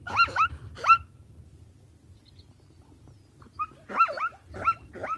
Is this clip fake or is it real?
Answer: real